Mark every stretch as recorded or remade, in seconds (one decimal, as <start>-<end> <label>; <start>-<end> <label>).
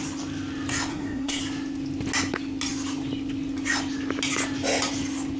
0.0-0.9 recorded; 0.9-1.4 remade; 1.4-5.4 recorded